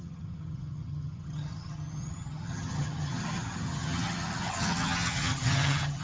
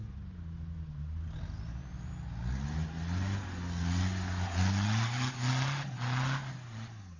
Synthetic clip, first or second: first